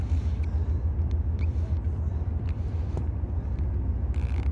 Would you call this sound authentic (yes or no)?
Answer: yes